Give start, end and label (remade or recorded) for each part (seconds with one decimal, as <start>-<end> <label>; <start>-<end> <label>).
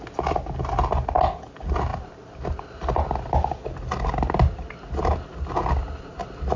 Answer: 0.0-6.6 recorded